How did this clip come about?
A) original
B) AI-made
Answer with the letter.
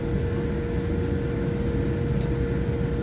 A